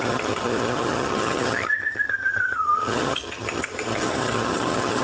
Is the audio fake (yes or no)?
yes